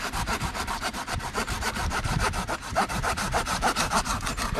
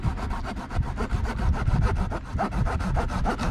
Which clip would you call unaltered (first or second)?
second